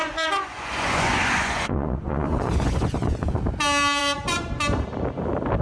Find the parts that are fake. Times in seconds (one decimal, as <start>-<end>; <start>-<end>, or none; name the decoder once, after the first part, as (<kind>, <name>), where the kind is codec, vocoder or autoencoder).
0.0-3.4 (vocoder, Vocos); 4.0-4.5